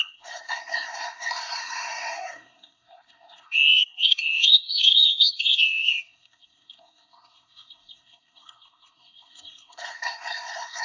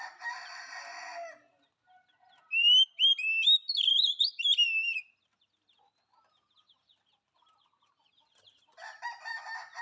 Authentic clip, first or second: second